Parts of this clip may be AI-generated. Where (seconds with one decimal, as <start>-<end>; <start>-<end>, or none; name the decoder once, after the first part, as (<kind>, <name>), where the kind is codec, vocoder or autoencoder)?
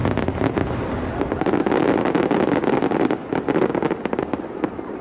0.0-0.9 (vocoder, BigVGAN v2)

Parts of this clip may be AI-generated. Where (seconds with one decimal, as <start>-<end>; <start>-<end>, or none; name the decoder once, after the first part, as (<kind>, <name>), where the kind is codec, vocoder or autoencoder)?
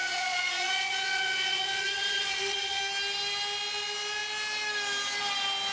0.0-2.8 (vocoder, Vocos)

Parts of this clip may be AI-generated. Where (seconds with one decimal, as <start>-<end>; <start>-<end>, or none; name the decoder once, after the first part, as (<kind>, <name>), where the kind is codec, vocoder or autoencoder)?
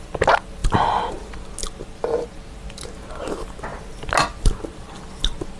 none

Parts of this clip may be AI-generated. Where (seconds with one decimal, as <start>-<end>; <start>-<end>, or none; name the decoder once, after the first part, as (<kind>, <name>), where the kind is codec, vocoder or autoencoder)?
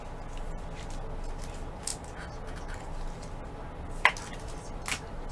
none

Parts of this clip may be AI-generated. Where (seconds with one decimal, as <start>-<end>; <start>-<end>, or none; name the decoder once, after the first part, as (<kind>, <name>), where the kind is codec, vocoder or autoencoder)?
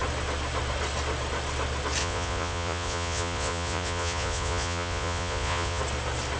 2.0-5.8 (vocoder, Vocos)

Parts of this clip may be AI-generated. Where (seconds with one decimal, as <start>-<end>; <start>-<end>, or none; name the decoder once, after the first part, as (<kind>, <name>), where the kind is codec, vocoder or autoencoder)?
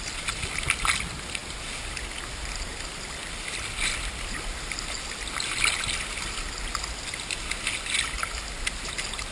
1.4-4.9 (vocoder, BigVGAN v2)